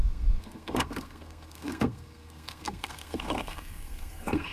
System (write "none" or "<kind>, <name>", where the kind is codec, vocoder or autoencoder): codec, SNAC